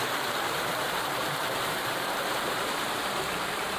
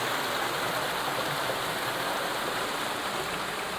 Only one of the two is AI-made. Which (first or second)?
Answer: first